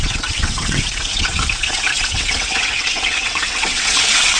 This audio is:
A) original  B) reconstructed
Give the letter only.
B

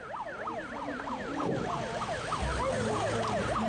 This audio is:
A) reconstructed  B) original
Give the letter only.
B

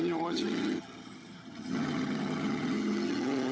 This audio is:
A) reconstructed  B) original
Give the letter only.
A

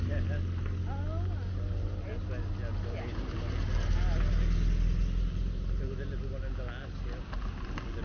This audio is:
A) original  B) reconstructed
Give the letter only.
A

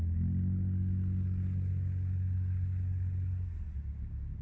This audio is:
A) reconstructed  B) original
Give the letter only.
B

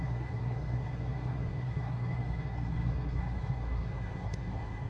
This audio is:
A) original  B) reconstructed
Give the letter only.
B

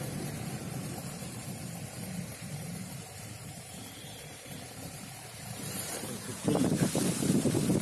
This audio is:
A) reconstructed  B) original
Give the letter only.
A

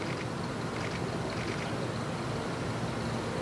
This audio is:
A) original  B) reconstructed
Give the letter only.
A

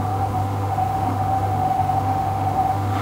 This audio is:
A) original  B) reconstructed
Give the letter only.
B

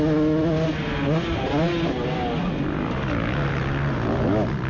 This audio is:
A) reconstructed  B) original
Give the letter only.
B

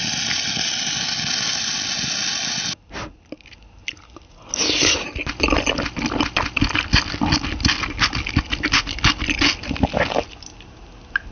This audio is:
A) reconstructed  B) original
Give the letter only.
B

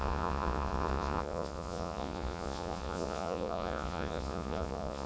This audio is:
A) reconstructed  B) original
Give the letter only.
A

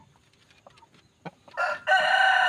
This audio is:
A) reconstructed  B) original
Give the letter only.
B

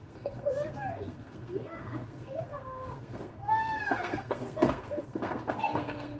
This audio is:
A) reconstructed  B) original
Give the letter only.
A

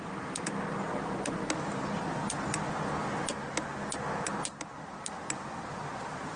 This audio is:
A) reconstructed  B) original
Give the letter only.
B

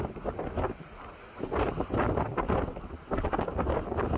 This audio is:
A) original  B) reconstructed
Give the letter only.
A